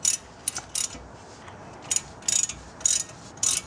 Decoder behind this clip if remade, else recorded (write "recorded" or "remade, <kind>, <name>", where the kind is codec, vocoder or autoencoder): recorded